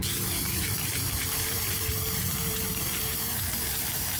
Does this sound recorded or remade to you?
remade